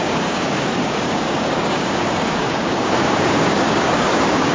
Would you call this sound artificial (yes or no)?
yes